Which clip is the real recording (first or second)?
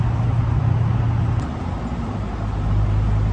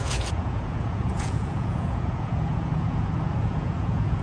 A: first